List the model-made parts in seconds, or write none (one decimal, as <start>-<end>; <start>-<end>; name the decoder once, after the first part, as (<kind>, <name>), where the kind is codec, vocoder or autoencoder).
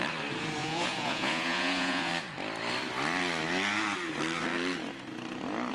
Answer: 0.6-2.1 (vocoder, Vocos)